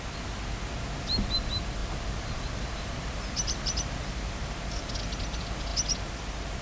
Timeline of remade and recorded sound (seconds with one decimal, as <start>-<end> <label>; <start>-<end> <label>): 0.0-1.8 recorded; 1.8-4.9 remade; 4.9-6.6 recorded